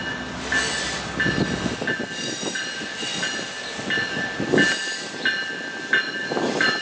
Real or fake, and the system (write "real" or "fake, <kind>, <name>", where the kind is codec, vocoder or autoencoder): real